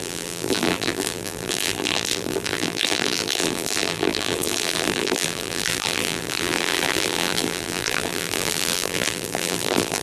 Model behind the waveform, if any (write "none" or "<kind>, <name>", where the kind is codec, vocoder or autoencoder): vocoder, BigVGAN v2